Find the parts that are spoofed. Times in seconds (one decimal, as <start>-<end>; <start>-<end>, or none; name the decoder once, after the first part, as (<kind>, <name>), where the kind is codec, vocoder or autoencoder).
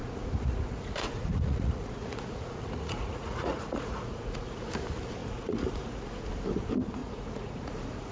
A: 0.0-4.7 (vocoder, Vocos); 5.2-6.2; 7.0-8.1